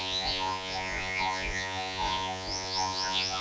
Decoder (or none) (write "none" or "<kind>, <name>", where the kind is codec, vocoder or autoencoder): vocoder, Vocos